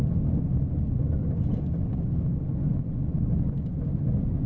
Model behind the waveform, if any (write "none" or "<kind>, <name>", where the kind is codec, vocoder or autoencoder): none